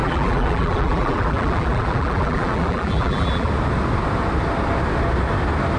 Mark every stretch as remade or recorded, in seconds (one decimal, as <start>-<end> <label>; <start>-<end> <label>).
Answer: 0.0-3.5 remade; 3.5-5.8 recorded